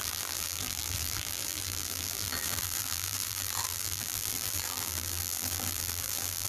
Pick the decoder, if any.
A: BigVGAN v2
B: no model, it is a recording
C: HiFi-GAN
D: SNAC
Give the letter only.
A